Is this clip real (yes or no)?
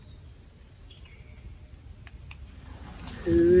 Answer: yes